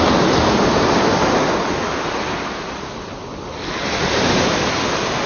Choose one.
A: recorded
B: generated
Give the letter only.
A